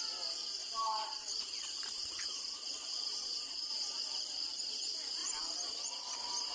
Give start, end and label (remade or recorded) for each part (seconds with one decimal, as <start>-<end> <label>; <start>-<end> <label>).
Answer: 0.0-0.6 recorded; 0.6-4.0 remade; 4.0-5.2 recorded; 5.2-5.9 remade; 5.9-6.5 recorded

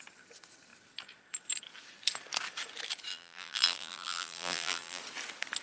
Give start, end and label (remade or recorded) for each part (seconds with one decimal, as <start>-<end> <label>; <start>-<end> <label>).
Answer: 0.0-3.1 recorded; 3.1-5.0 remade; 5.0-5.6 recorded

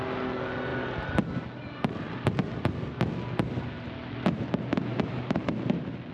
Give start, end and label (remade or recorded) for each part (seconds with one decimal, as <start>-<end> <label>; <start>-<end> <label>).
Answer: 0.0-4.9 recorded; 4.9-5.5 remade; 5.5-6.1 recorded

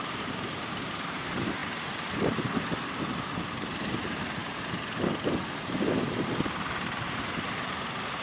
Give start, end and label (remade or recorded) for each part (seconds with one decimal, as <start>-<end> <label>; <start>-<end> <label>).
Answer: 0.0-4.4 remade; 4.4-6.7 recorded; 6.7-8.2 remade

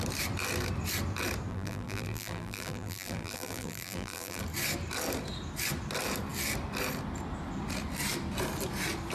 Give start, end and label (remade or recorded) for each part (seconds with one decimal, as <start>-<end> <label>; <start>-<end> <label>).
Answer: 0.0-1.5 recorded; 1.5-4.4 remade; 4.4-9.1 recorded

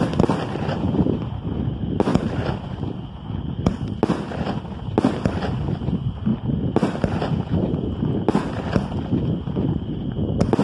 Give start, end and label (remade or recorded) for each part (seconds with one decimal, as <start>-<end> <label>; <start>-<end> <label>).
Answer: 0.0-10.6 recorded